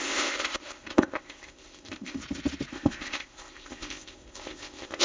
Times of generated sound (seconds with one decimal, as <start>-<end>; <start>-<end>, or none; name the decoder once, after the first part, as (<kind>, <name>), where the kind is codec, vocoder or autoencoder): 0.0-2.2 (codec, ZipCodec); 2.7-5.0

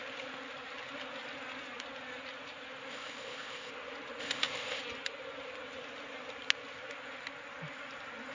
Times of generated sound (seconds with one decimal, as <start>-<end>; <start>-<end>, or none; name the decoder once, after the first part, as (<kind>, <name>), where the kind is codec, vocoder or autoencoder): 2.9-3.7 (codec, ZipCodec); 4.2-4.8

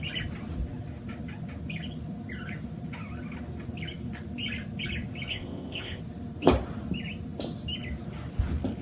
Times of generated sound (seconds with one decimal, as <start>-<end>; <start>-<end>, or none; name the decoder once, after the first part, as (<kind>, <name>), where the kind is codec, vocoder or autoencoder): 5.3-6.0 (codec, ZipCodec)

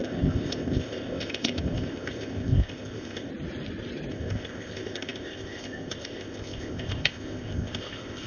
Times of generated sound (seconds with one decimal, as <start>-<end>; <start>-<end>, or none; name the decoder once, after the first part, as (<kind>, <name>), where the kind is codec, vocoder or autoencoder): 0.0-3.3 (codec, ZipCodec); 4.1-8.3

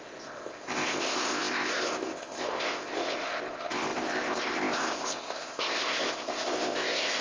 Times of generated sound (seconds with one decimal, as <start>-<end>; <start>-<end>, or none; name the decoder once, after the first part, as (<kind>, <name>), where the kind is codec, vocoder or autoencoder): 0.0-7.2 (codec, ZipCodec)

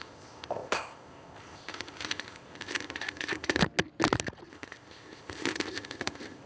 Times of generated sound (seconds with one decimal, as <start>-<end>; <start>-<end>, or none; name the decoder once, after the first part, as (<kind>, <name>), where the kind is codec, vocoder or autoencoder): 0.0-3.6 (codec, ZipCodec); 4.5-6.5